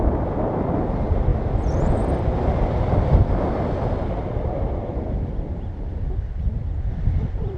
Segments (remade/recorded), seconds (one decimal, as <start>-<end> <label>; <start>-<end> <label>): 0.0-7.6 recorded